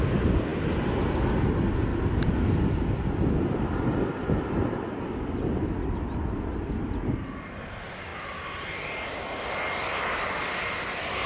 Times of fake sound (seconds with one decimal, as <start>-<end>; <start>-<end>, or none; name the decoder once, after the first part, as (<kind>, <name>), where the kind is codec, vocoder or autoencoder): none